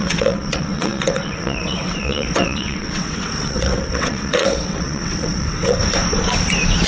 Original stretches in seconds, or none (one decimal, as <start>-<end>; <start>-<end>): 5.8-6.9